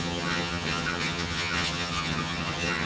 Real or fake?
fake